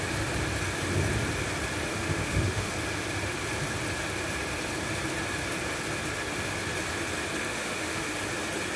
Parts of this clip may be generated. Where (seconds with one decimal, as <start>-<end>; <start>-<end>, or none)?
1.9-2.7; 7.5-8.1